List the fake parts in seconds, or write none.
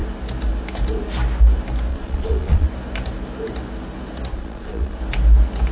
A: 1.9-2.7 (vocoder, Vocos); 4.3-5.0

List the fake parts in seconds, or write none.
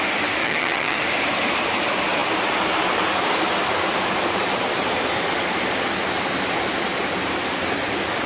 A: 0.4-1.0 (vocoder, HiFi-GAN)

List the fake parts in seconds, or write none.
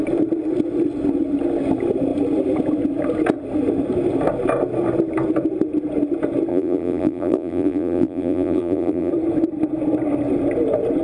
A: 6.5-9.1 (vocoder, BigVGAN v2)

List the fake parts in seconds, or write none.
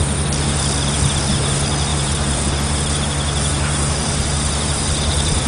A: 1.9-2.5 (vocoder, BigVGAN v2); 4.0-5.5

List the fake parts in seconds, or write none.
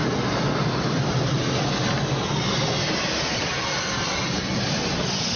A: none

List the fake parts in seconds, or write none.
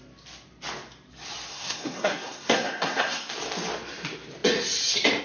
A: 1.5-3.3 (codec, SNAC)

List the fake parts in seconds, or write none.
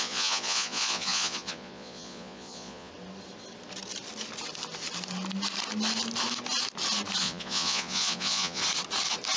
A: 0.0-2.9 (vocoder, Vocos); 7.2-8.6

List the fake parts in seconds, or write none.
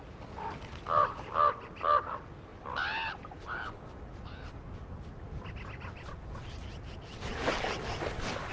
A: none